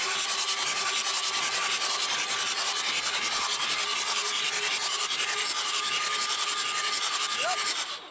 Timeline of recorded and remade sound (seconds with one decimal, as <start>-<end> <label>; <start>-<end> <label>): 0.0-8.1 recorded